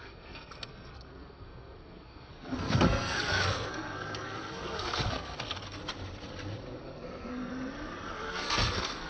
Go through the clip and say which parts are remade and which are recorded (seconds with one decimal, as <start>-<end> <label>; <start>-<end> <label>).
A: 0.0-5.8 remade; 5.8-6.8 recorded; 6.8-7.5 remade; 7.5-8.1 recorded; 8.1-9.1 remade